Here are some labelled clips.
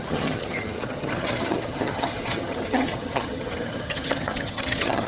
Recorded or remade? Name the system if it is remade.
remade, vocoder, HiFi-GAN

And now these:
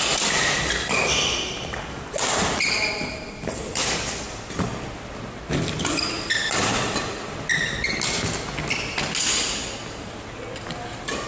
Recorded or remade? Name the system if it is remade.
recorded